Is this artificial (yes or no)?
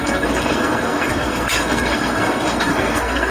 yes